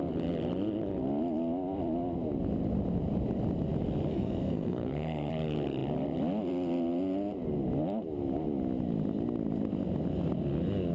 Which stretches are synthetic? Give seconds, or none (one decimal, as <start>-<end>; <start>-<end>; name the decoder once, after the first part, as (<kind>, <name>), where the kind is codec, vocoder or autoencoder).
4.1-5.3 (codec, SNAC)